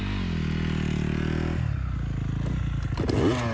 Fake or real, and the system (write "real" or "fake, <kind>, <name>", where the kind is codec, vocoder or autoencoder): real